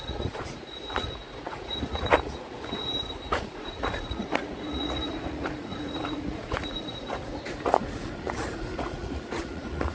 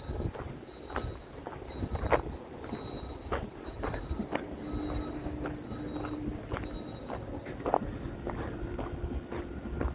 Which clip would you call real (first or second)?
second